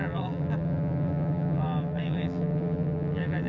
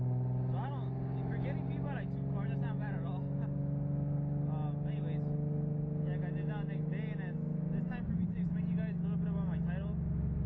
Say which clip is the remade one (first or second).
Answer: first